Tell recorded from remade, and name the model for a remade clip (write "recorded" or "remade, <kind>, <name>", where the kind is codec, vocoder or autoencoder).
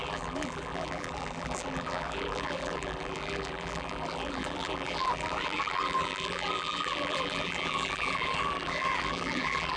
remade, vocoder, BigVGAN v2